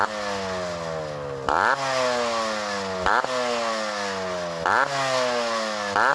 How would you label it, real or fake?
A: real